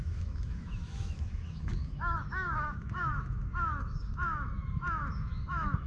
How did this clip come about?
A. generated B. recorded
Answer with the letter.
A